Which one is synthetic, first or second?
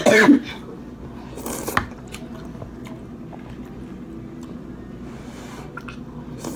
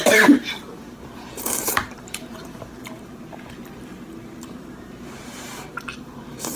second